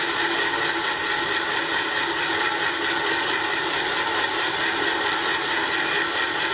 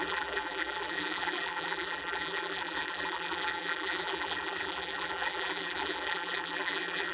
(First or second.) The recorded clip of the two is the first